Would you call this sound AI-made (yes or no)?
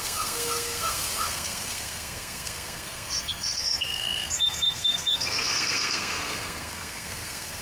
yes